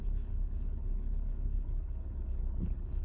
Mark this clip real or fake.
fake